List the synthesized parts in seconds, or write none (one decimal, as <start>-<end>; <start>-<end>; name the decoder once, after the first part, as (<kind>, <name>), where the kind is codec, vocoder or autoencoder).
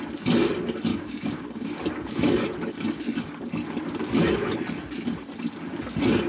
0.9-1.8 (codec, DAC)